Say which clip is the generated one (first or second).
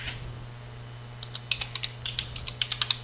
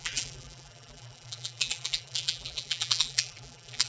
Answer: second